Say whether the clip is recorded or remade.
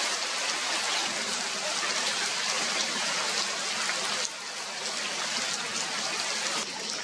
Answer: recorded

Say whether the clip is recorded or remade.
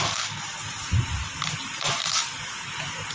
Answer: recorded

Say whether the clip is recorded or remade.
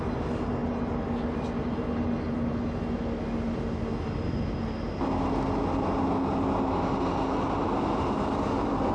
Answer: recorded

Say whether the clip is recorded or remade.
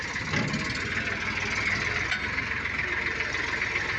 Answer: recorded